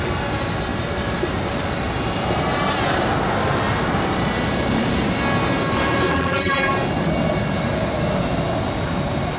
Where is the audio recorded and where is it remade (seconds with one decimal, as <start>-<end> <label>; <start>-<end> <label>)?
0.0-6.1 recorded; 6.1-6.7 remade; 6.7-9.4 recorded